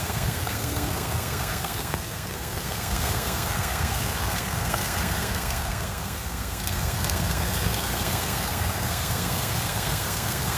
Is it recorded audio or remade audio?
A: remade